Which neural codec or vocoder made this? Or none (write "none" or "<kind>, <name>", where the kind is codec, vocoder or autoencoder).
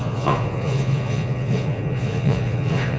vocoder, Vocos